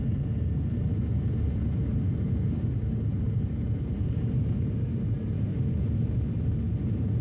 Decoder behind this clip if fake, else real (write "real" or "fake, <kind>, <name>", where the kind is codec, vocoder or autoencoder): fake, vocoder, BigVGAN v2